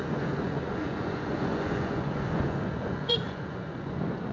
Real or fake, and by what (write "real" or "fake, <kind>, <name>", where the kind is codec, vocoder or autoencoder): fake, vocoder, Vocos